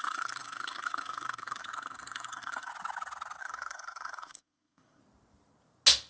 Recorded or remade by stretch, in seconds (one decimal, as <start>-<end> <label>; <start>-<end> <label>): 0.0-2.7 remade; 2.7-3.4 recorded; 3.4-5.0 remade; 5.0-6.1 recorded